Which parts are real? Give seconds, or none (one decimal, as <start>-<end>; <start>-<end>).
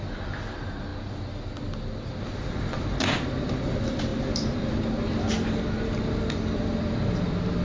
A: 0.0-7.6